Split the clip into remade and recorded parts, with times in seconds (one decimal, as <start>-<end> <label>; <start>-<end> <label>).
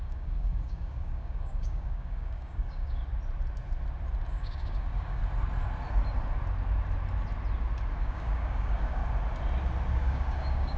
0.0-3.0 remade; 3.0-4.3 recorded; 4.3-5.2 remade; 5.2-8.0 recorded; 8.0-9.0 remade; 9.0-9.9 recorded; 9.9-10.8 remade